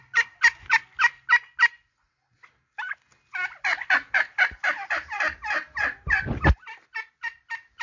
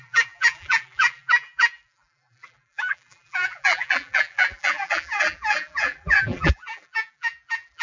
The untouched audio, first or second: first